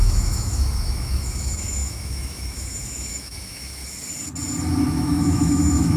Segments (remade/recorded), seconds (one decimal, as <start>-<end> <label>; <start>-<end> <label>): 0.0-3.8 remade; 3.8-4.9 recorded; 4.9-6.0 remade